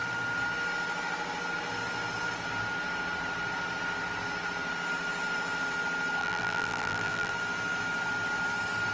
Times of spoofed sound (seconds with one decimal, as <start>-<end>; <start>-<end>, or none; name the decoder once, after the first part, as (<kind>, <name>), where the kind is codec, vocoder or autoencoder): 6.2-7.3 (vocoder, BigVGAN v2)